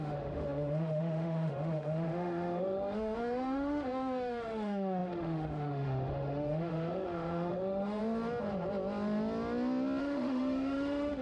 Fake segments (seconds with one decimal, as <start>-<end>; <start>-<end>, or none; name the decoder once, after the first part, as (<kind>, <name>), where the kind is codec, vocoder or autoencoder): 0.0-8.0 (autoencoder, DAC-VAE); 10.0-11.2